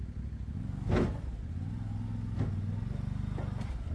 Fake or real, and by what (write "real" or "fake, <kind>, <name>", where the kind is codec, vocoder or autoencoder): real